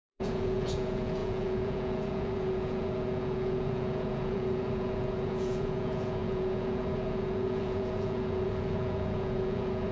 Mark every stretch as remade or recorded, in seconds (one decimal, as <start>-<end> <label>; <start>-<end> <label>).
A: 0.0-9.9 remade